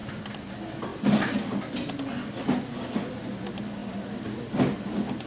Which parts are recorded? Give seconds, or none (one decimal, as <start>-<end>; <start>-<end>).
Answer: 0.0-5.3